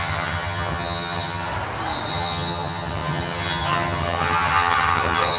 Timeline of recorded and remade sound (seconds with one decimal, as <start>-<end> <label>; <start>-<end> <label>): 0.0-1.5 remade; 1.5-2.1 recorded; 2.1-5.4 remade